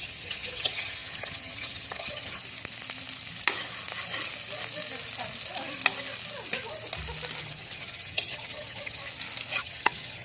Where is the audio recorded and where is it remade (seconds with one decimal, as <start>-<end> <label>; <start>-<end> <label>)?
0.0-2.4 remade; 2.4-7.4 recorded; 7.4-9.0 remade; 9.0-9.6 recorded; 9.6-10.2 remade